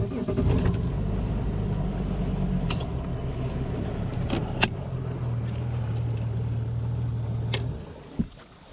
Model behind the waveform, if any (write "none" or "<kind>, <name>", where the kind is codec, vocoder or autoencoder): none